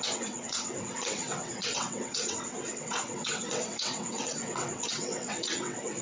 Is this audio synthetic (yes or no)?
yes